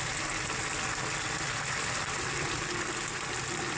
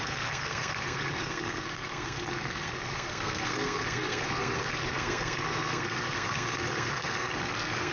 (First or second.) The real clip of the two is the first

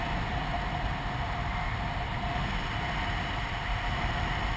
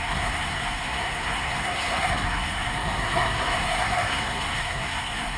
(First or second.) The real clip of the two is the first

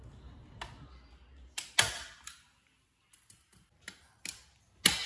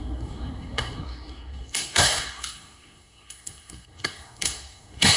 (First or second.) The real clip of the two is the first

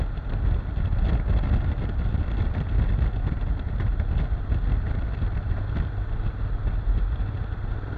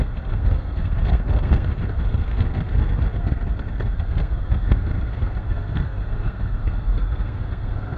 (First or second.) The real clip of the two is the first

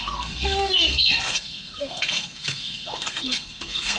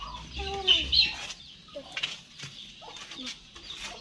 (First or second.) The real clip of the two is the second